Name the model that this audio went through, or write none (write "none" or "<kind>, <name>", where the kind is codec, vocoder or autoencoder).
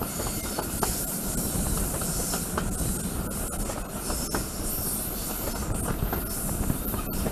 none